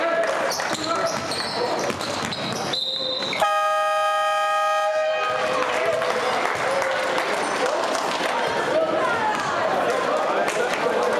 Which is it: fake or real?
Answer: real